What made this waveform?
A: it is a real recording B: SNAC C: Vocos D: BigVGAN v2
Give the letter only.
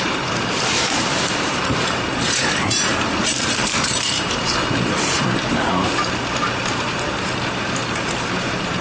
D